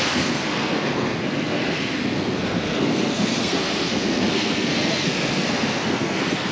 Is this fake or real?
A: fake